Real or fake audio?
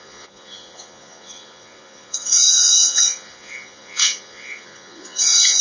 fake